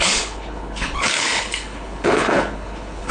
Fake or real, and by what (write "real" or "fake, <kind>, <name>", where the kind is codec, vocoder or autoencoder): fake, codec, HILCodec